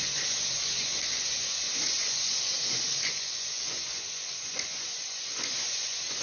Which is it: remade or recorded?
remade